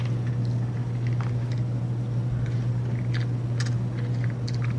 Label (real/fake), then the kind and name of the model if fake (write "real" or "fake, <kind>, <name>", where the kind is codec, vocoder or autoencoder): real